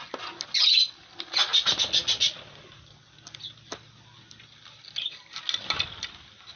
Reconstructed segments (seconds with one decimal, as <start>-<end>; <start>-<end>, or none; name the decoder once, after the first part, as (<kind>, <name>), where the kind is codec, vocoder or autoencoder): none